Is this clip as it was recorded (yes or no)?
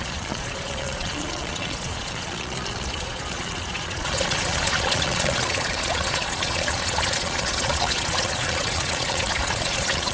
no